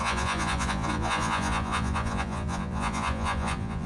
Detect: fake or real fake